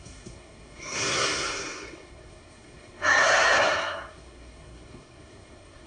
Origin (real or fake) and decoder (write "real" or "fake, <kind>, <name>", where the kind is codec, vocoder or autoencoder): fake, codec, SNAC